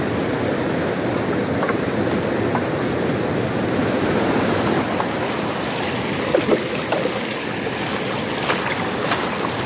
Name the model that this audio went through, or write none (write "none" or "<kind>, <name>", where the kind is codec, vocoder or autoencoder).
none